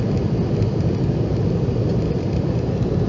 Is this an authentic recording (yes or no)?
yes